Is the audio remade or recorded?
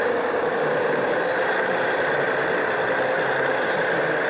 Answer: recorded